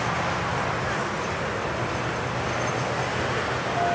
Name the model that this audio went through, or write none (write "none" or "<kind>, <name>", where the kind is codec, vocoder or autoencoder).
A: none